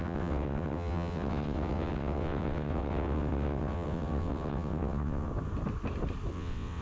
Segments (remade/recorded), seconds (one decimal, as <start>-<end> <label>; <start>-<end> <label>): 0.0-5.3 remade; 5.3-6.3 recorded; 6.3-6.8 remade